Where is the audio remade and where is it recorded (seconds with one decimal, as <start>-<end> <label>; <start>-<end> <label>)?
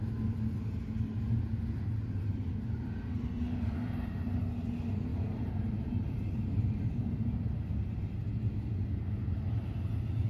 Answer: 0.0-5.1 recorded; 5.1-6.8 remade; 6.8-10.3 recorded